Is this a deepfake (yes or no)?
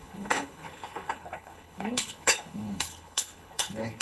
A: yes